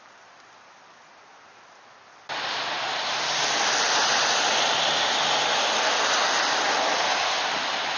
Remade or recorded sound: recorded